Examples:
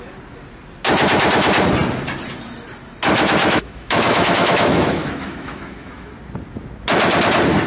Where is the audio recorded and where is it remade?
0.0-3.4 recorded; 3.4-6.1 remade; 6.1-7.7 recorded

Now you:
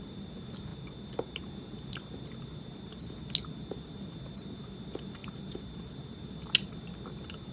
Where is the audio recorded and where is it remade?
0.0-7.5 recorded

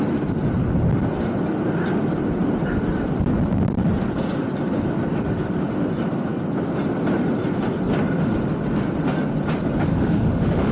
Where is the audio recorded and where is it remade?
0.0-9.9 recorded; 9.9-10.7 remade

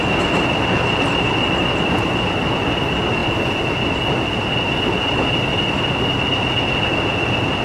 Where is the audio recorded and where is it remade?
0.0-7.6 recorded

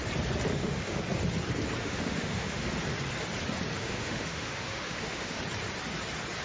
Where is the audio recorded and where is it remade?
0.0-0.5 recorded; 0.5-1.0 remade; 1.0-1.8 recorded; 1.8-2.7 remade; 2.7-3.8 recorded; 3.8-5.4 remade; 5.4-6.4 recorded

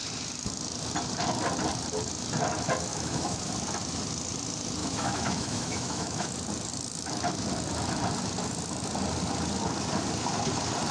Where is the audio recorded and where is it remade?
0.0-2.9 recorded; 2.9-3.5 remade; 3.5-4.8 recorded; 4.8-6.3 remade; 6.3-10.9 recorded

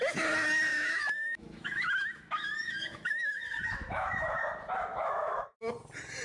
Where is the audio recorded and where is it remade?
0.0-0.7 recorded; 0.7-4.4 remade; 4.4-4.9 recorded; 4.9-5.7 remade; 5.7-6.2 recorded

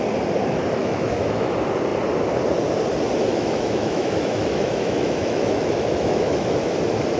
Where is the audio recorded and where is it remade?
0.0-0.8 recorded; 0.8-1.5 remade; 1.5-3.3 recorded; 3.3-6.7 remade; 6.7-7.2 recorded